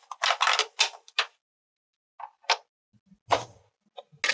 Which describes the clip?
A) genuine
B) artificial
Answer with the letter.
A